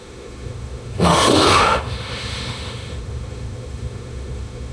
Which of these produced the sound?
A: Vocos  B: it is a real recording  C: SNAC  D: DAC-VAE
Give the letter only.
D